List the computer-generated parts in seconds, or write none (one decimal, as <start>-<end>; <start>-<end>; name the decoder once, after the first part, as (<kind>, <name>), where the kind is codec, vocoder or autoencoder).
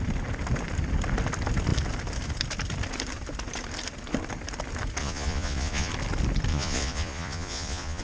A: 5.0-5.9 (vocoder, Vocos); 6.5-8.0